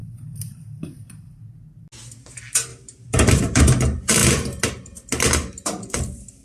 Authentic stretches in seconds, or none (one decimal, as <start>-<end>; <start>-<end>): 1.3-2.7; 3.6-6.4